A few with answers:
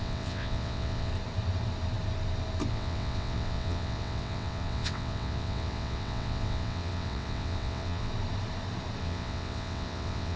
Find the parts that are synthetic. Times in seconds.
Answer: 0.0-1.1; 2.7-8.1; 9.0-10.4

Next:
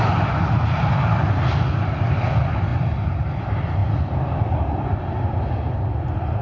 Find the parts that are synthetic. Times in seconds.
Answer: none